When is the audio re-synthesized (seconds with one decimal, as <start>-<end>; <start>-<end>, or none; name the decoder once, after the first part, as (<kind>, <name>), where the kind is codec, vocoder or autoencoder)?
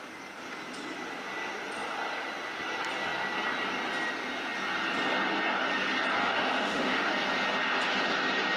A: 6.2-7.1 (autoencoder, DAC-VAE)